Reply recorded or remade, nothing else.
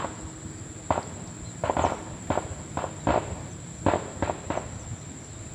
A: recorded